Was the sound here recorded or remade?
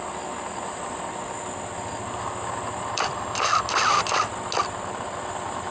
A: recorded